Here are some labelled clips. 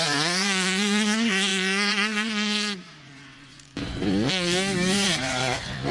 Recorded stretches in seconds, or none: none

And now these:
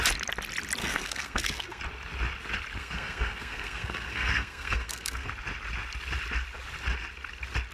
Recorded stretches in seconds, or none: 0.0-0.8; 1.8-2.8; 5.3-7.7

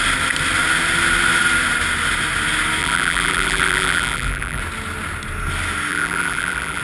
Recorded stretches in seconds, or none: 0.0-2.8; 4.6-5.9

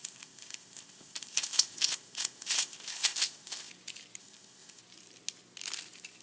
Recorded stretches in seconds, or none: 3.7-4.2; 4.8-6.2

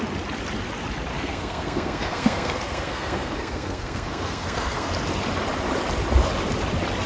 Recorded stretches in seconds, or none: 0.0-1.1; 4.9-7.1

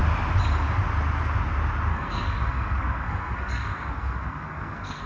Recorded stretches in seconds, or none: 0.0-1.9

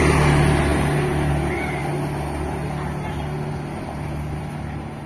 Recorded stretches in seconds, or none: 0.0-5.1

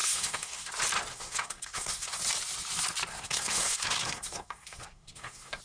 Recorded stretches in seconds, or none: 0.7-1.1; 2.2-3.1